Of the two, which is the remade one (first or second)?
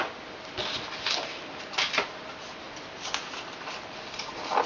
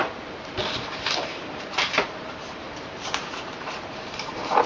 second